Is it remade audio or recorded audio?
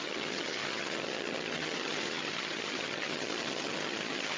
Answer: remade